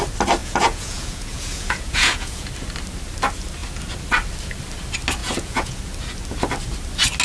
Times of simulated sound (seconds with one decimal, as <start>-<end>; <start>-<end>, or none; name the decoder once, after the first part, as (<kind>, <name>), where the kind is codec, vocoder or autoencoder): 0.4-2.5 (vocoder, Vocos); 5.2-5.8